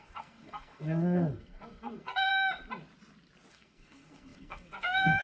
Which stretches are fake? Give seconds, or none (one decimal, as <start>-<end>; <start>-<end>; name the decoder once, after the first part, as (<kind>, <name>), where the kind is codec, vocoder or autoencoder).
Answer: 0.0-2.3 (codec, SNAC); 3.5-5.2